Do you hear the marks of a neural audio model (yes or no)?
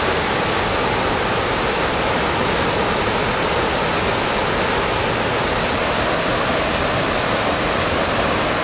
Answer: no